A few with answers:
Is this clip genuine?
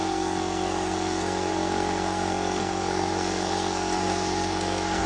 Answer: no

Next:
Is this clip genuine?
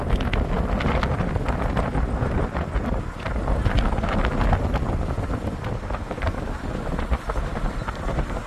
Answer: yes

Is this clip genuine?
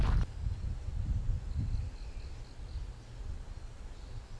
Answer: yes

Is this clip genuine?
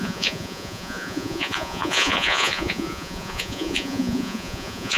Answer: no